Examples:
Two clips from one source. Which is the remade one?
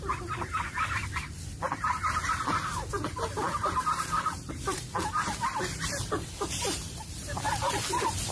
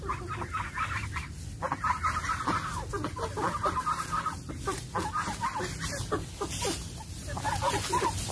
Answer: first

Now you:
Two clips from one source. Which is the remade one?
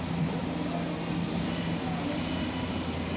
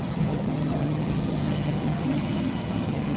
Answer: second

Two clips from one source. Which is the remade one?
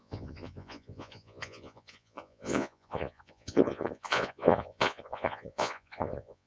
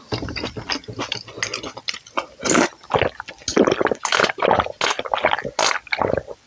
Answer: first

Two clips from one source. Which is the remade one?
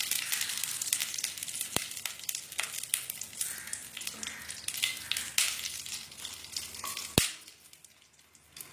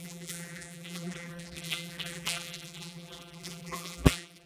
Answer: second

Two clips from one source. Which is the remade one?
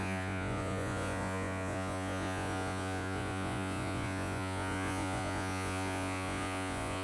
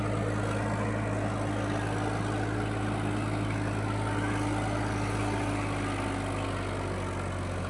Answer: first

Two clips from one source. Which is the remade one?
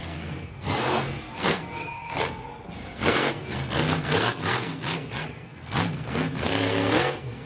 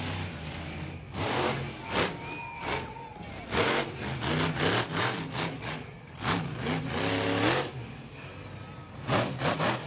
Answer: first